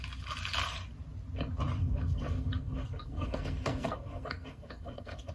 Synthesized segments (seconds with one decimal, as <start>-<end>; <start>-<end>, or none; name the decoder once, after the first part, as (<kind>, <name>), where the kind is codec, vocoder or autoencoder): 1.8-5.3 (codec, SNAC)